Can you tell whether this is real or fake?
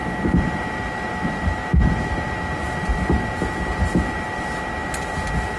real